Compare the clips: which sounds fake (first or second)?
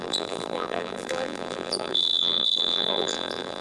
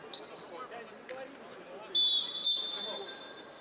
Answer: first